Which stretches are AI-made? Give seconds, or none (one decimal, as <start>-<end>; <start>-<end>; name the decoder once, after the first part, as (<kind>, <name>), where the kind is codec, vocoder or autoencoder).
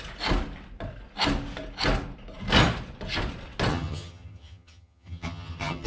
3.7-5.9 (vocoder, HiFi-GAN)